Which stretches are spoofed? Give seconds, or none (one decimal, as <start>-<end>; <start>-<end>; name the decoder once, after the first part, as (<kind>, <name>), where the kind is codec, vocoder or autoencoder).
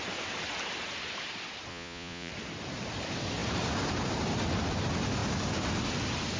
1.7-2.3 (vocoder, Vocos)